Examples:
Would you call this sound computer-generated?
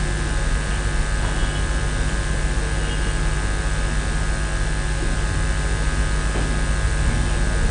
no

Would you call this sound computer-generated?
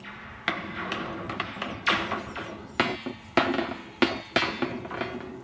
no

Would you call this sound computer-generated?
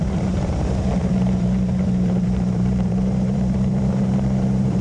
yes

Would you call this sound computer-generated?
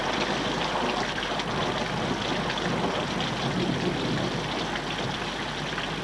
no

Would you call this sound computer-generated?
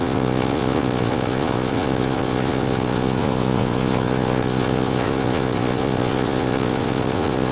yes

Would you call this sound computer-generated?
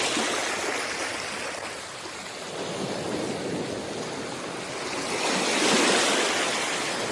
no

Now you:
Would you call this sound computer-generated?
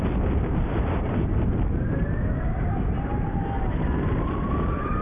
no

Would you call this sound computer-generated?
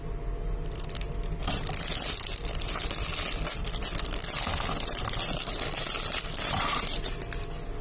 no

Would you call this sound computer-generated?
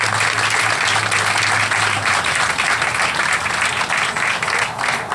no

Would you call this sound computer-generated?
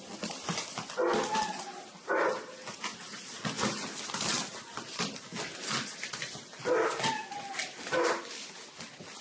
no